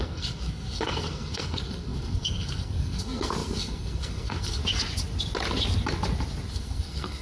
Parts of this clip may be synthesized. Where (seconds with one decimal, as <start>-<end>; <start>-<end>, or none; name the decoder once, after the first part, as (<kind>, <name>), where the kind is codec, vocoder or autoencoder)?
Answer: 0.0-4.6 (codec, SNAC); 6.5-7.2